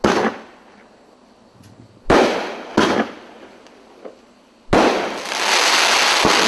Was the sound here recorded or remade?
recorded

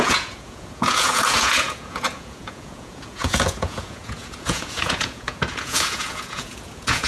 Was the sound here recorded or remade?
remade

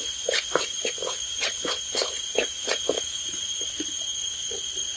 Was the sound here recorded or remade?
recorded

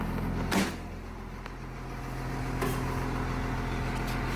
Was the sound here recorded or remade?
recorded